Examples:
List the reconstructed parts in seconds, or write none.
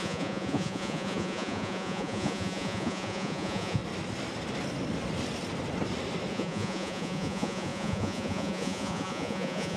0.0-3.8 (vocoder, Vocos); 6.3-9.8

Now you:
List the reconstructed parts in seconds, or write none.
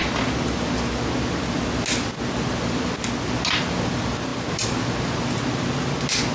none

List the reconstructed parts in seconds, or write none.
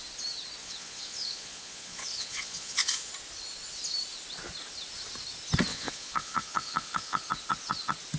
0.6-3.1 (vocoder, Vocos); 5.7-7.2